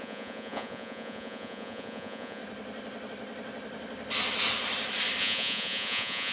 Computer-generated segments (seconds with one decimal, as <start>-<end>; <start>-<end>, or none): 0.0-2.4; 5.2-6.3